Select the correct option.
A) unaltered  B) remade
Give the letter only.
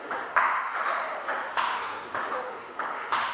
B